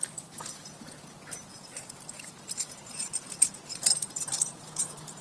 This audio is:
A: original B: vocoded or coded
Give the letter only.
B